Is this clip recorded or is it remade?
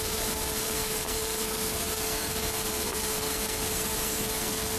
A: remade